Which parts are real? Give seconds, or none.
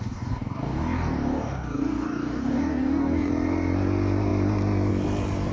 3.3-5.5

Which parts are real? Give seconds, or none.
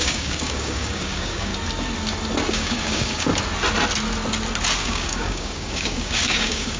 1.5-2.5; 3.3-4.8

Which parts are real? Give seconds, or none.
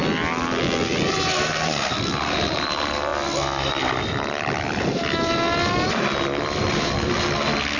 0.0-7.8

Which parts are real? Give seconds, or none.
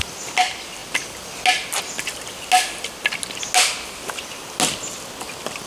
0.0-5.7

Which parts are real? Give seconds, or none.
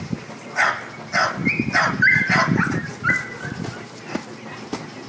0.0-5.1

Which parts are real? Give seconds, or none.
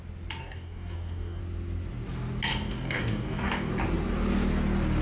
0.0-0.4; 1.4-2.5; 3.7-5.0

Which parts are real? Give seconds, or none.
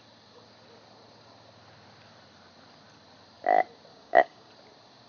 0.0-3.9; 4.5-5.1